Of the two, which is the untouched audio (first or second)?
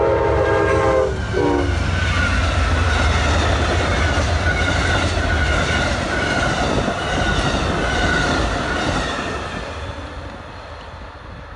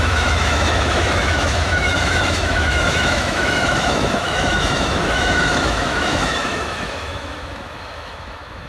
first